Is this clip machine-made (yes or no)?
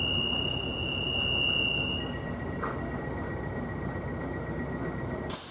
no